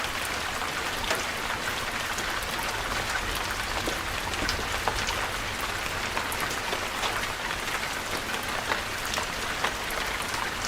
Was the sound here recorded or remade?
recorded